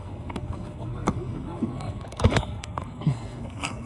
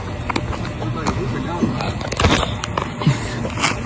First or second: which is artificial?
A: first